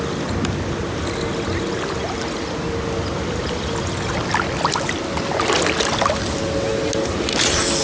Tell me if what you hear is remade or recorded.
recorded